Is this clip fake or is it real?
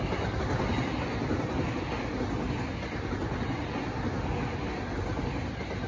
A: real